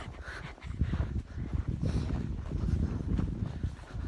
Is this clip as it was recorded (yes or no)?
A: yes